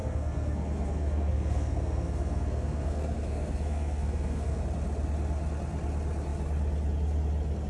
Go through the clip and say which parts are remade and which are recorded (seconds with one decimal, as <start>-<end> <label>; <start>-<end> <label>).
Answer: 0.0-4.6 remade; 4.6-7.7 recorded